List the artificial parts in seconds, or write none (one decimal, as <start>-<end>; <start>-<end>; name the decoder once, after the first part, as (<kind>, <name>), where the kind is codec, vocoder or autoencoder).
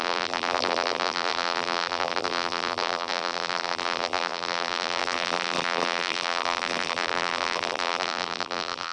0.0-8.9 (vocoder, BigVGAN v2)